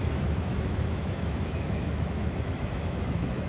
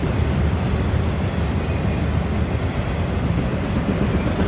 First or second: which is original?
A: second